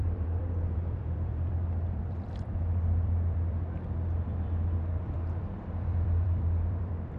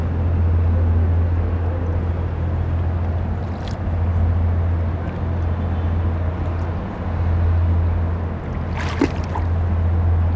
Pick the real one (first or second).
second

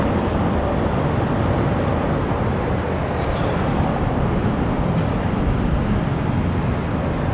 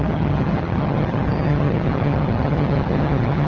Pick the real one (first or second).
first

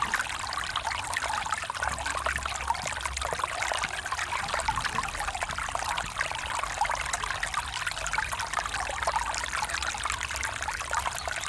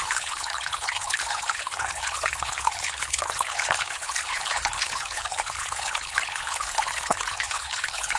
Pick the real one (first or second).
first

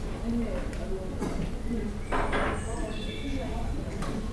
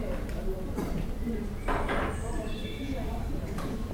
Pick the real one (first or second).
first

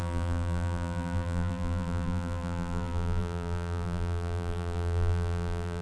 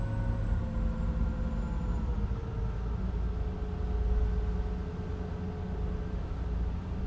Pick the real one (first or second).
second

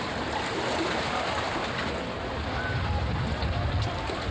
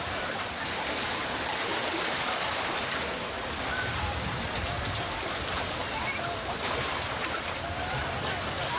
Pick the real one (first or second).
first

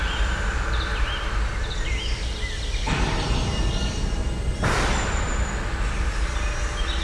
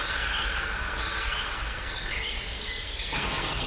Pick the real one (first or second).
first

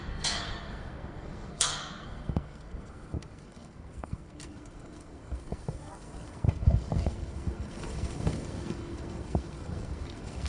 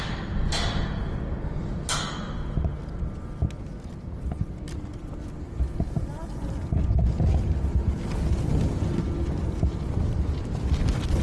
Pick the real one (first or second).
second